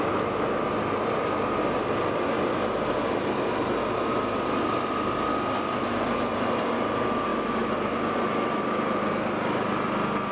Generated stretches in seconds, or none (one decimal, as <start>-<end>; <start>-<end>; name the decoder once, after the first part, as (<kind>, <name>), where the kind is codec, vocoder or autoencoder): none